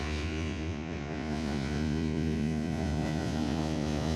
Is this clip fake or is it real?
fake